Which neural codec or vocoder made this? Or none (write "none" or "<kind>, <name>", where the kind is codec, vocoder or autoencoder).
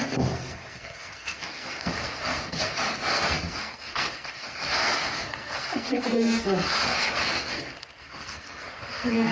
codec, SNAC